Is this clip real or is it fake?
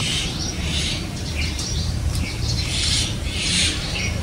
fake